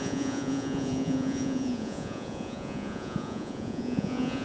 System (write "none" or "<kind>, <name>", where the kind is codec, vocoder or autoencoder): vocoder, Vocos